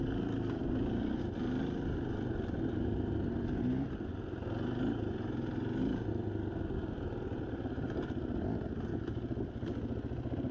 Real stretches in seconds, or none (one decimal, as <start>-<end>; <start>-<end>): 0.0-10.5